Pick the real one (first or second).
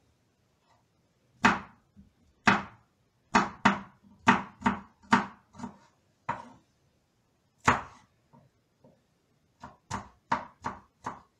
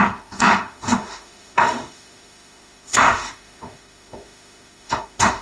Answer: first